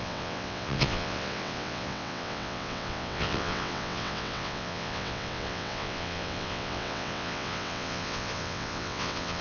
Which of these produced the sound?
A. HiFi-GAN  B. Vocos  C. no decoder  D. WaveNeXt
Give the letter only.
D